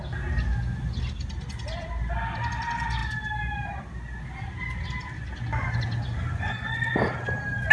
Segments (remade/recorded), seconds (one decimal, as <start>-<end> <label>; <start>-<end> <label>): 0.0-7.7 recorded